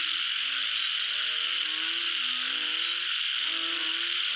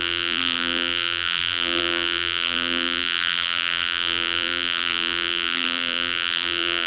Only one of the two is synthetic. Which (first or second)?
second